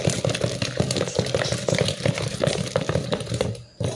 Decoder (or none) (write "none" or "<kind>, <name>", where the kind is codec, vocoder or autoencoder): none